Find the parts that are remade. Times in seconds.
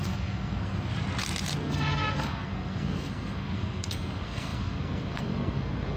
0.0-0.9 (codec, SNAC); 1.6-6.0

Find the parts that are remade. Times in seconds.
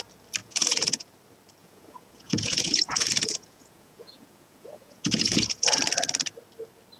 0.4-1.1 (vocoder, Vocos); 1.6-5.8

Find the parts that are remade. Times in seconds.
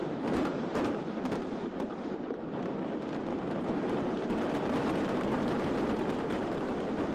0.0-2.4 (vocoder, BigVGAN v2); 3.3-7.1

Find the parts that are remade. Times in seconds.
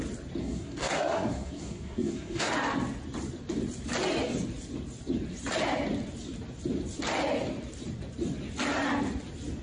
0.4-2.5 (codec, SNAC)